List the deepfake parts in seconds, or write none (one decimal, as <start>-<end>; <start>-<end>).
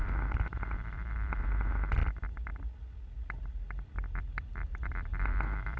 0.0-2.0; 4.2-5.8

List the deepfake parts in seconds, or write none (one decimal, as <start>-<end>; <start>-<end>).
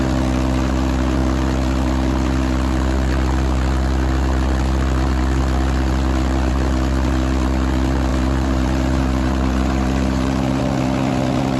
8.1-10.6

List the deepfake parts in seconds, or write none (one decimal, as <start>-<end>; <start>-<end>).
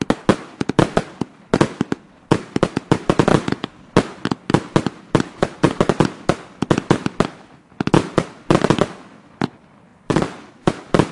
9.9-10.5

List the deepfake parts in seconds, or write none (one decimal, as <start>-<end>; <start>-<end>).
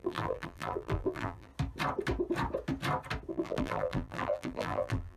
0.0-1.5; 3.3-5.2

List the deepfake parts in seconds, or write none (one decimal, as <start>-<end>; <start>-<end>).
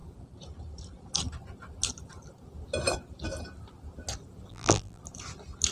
4.5-5.0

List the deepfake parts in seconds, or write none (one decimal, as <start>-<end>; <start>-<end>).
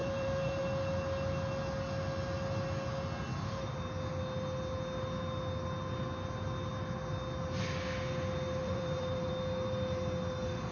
0.0-0.6; 8.6-9.3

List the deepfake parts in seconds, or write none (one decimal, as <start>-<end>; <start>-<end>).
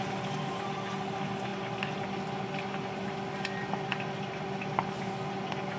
none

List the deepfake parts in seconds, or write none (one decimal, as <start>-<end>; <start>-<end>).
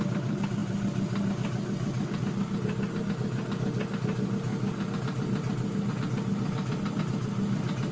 none